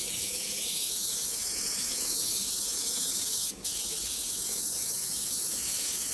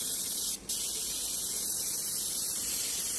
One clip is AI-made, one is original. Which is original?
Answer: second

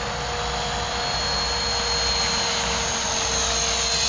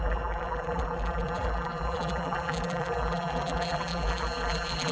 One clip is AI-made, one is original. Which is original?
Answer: first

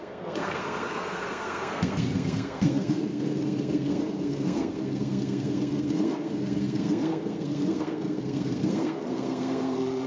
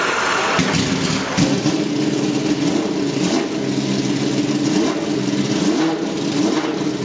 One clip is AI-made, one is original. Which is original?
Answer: second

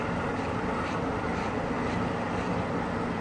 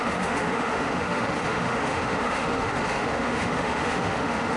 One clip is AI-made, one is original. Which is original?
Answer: first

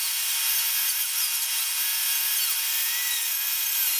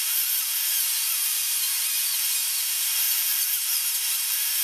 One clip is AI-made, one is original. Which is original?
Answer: first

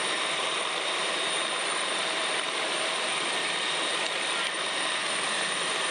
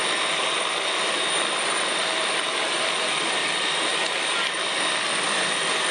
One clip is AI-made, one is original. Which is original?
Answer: second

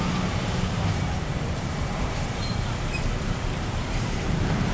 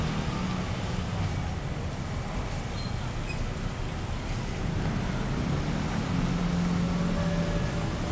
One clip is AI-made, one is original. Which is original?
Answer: second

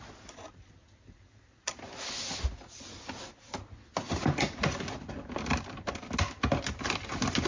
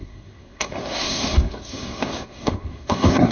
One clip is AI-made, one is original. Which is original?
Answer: first